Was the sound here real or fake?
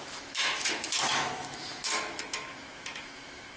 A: fake